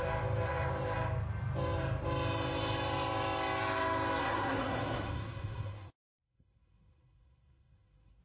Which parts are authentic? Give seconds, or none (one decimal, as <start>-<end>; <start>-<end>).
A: 0.0-4.2

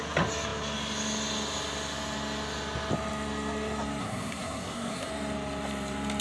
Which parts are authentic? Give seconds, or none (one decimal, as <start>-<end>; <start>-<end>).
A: 0.0-4.0; 5.1-6.2

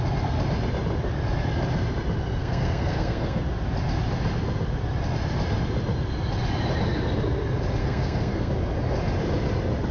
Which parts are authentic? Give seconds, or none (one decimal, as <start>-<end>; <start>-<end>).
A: 0.0-2.4; 3.4-7.8; 8.5-9.9

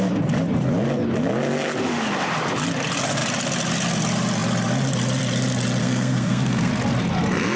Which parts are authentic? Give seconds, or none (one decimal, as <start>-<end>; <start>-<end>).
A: 0.0-5.8; 6.7-7.6

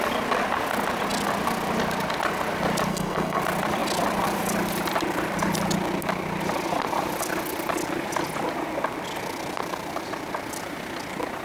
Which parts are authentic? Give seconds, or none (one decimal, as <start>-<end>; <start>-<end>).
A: 0.0-2.9; 3.4-11.4

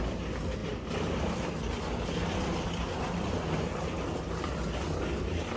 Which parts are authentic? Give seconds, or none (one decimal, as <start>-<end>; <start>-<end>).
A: 0.0-5.6

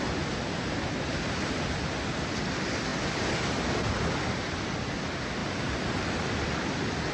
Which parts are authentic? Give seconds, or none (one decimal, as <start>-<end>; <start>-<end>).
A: 0.0-7.1

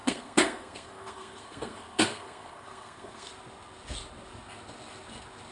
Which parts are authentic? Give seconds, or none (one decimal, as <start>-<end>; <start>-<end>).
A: 3.3-5.5